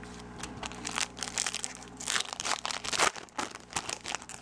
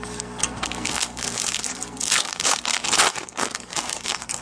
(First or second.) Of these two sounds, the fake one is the second